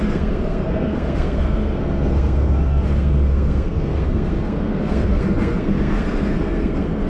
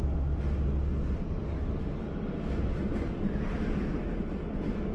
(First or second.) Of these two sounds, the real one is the second